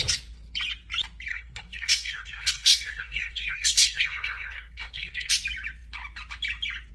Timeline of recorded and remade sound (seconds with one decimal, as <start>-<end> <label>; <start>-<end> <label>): 0.0-1.3 recorded; 1.3-5.3 remade; 5.3-6.9 recorded